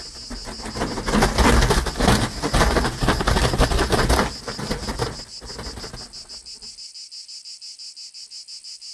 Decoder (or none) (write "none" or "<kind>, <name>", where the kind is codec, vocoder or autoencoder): none